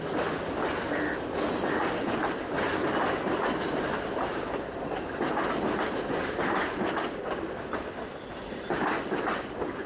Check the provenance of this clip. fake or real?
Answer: real